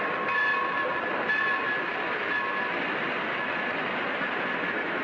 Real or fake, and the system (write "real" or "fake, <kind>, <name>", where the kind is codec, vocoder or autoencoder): real